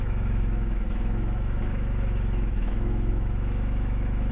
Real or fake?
fake